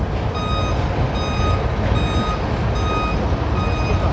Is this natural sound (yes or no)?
yes